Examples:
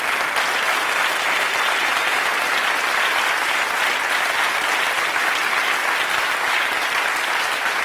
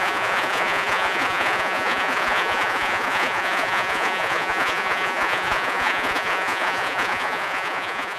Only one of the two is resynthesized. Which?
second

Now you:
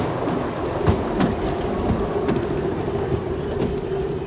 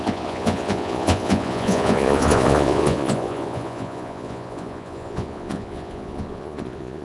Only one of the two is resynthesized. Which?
second